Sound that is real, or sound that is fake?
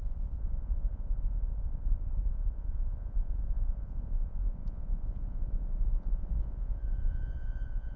fake